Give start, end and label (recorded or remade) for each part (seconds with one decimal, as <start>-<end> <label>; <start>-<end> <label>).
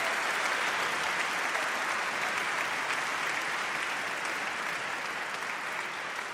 0.0-6.3 recorded